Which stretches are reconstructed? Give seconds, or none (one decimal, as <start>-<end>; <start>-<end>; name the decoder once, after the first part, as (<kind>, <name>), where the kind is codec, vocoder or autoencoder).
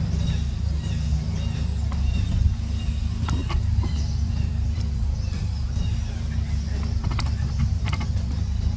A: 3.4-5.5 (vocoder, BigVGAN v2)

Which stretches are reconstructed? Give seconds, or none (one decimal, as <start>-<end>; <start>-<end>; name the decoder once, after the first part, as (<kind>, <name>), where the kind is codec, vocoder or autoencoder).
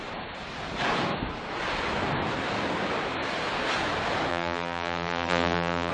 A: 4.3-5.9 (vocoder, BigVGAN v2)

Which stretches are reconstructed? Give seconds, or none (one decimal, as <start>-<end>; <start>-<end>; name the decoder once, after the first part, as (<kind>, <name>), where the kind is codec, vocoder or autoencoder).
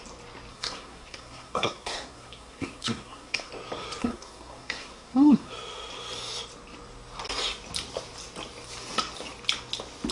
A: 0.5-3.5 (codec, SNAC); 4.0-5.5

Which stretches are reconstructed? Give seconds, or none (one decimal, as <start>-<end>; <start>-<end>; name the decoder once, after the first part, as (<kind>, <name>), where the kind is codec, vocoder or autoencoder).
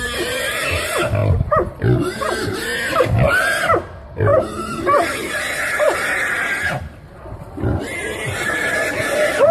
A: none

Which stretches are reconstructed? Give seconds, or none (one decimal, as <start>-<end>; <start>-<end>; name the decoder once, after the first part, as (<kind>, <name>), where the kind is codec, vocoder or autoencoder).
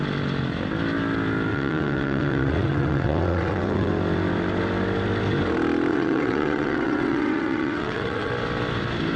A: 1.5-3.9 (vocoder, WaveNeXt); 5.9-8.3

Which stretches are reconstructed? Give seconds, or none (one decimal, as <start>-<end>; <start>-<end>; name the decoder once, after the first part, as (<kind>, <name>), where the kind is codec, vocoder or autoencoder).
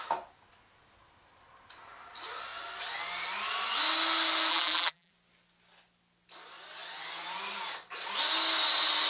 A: 4.5-5.1 (vocoder, BigVGAN v2)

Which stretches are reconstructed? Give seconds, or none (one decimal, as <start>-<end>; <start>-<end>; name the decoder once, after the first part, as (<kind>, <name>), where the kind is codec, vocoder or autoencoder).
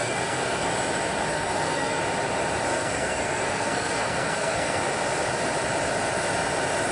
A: 0.0-0.7 (codec, SNAC); 1.3-2.0; 2.7-4.8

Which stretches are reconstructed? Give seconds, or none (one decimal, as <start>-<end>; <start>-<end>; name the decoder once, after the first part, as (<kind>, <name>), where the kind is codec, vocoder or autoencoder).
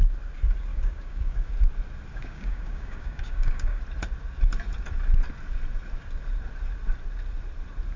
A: 0.7-1.5 (codec, DAC); 2.1-3.8